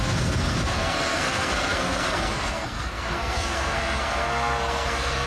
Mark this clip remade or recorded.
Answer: remade